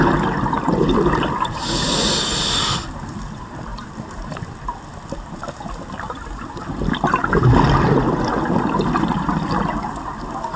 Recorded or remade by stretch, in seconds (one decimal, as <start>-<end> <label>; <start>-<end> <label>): 0.0-10.6 recorded